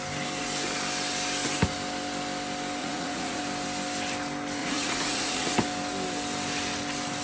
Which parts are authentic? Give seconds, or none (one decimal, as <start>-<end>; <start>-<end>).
0.0-2.8; 3.4-4.6; 5.5-7.2